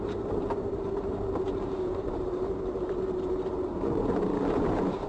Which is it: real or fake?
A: fake